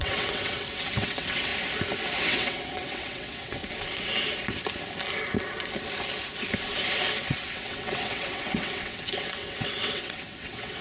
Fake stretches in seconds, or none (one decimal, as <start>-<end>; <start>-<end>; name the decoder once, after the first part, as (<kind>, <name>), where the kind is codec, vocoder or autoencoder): 0.0-1.5 (vocoder, WaveNeXt); 2.2-3.6; 7.2-10.8